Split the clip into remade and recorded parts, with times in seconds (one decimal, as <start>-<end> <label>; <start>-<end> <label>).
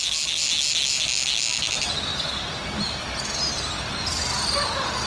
0.0-2.1 recorded; 2.1-2.6 remade; 2.6-5.1 recorded